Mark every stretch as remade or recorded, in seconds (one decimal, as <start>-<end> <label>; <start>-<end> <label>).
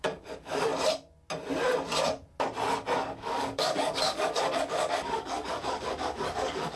0.0-0.7 remade; 0.7-3.0 recorded; 3.0-6.8 remade